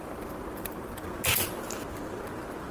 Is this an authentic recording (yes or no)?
yes